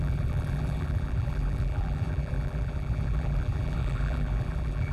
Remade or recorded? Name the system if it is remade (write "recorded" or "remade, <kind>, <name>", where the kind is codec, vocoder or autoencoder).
remade, vocoder, BigVGAN v2